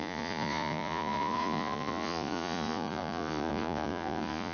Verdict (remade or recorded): remade